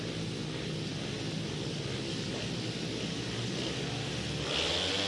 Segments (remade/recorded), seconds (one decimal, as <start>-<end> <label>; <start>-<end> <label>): 0.0-5.1 recorded